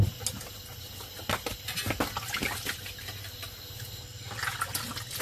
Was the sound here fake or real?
real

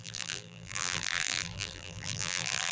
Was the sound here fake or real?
fake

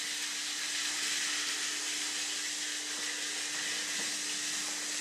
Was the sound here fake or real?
real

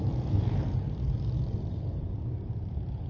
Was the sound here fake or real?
fake